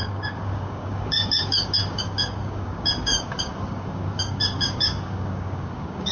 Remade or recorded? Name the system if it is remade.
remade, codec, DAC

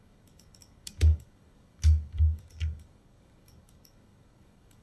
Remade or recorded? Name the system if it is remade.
remade, codec, DAC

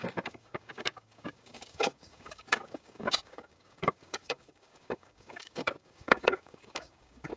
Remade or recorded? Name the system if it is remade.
remade, codec, DAC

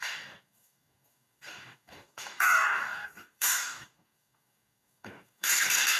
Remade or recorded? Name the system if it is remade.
remade, codec, DAC